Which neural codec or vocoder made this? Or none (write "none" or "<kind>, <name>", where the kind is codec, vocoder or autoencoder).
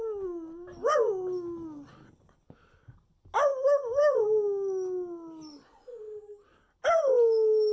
none